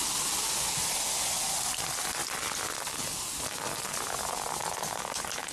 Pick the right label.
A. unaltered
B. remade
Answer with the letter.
A